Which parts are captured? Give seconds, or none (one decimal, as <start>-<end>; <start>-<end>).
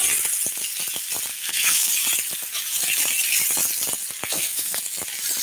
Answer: 0.0-1.3; 1.9-4.2; 4.8-5.4